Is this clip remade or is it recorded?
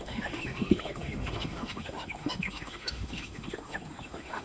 remade